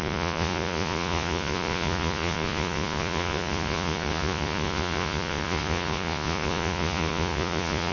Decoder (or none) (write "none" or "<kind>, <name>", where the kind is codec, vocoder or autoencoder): vocoder, Vocos